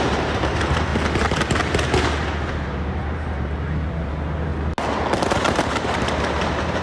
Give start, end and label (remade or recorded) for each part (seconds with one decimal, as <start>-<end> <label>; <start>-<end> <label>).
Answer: 0.0-0.9 remade; 0.9-2.5 recorded; 2.5-4.5 remade; 4.5-5.2 recorded; 5.2-6.8 remade